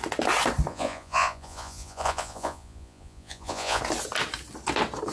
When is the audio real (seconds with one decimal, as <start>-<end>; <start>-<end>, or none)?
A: 0.0-0.7; 3.8-5.1